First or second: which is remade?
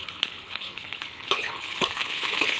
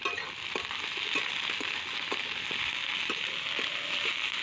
first